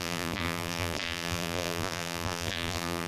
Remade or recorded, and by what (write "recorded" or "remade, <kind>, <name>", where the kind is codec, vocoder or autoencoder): remade, vocoder, BigVGAN v2